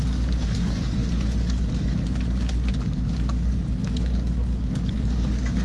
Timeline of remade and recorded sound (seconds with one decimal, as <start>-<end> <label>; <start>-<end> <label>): 0.0-1.0 remade; 1.0-2.7 recorded; 2.7-5.6 remade